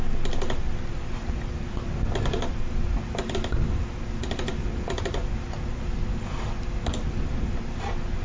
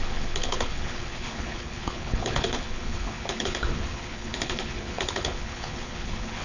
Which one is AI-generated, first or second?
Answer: second